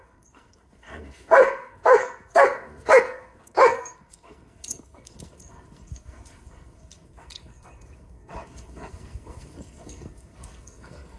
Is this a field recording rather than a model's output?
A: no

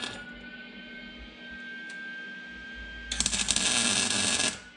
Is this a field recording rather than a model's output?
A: yes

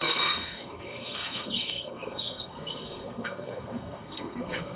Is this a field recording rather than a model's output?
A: no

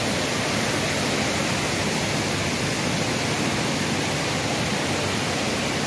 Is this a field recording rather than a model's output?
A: yes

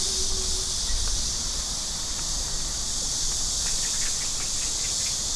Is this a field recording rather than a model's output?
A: yes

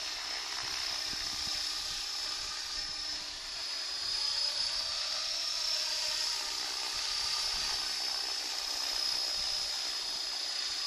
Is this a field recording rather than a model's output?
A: yes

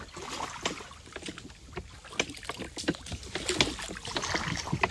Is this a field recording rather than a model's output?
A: yes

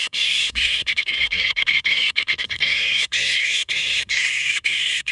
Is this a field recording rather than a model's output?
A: no